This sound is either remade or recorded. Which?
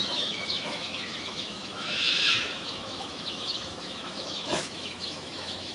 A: remade